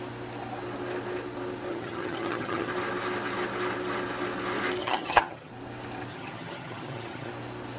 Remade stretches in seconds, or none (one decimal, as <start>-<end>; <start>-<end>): 1.7-2.7; 4.8-5.5; 6.1-7.3